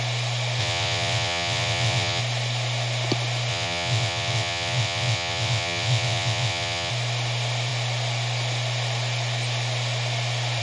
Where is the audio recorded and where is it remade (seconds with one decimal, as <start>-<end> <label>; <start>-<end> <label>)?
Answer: 0.0-0.6 recorded; 0.6-2.2 remade; 2.2-3.5 recorded; 3.5-6.9 remade; 6.9-10.6 recorded

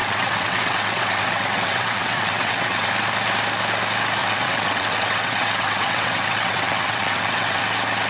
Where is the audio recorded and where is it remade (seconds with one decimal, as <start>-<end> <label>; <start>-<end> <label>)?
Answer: 0.0-2.9 remade; 2.9-4.2 recorded; 4.2-7.6 remade; 7.6-8.1 recorded

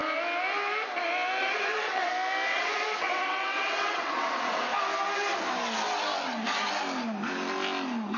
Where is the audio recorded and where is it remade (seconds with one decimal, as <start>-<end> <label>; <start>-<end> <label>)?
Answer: 0.0-1.4 recorded; 1.4-2.1 remade; 2.1-2.5 recorded; 2.5-4.7 remade; 4.7-8.2 recorded

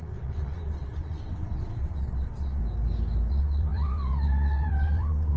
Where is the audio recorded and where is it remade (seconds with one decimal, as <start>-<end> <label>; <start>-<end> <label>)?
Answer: 0.0-2.6 remade; 2.6-3.3 recorded; 3.3-5.4 remade

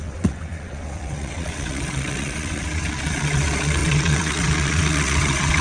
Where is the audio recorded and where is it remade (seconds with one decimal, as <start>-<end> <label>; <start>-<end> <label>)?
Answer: 0.0-5.6 remade

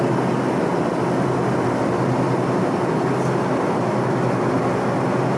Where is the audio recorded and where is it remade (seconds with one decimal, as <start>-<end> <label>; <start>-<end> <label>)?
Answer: 0.0-5.4 recorded